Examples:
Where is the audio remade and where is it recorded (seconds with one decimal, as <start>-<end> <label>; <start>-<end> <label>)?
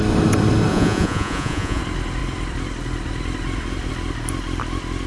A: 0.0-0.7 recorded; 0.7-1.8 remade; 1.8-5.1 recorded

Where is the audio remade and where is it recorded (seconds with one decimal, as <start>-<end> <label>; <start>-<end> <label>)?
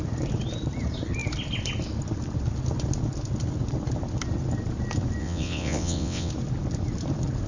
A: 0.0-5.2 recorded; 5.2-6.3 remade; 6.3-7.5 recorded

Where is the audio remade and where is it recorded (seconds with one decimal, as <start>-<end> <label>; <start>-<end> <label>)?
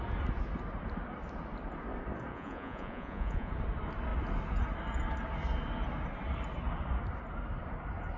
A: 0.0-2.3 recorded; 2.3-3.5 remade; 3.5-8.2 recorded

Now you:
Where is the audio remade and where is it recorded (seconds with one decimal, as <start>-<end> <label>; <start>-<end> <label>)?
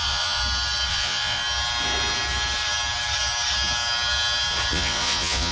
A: 0.0-0.4 remade; 0.4-0.9 recorded; 0.9-1.4 remade; 1.4-4.7 recorded; 4.7-5.5 remade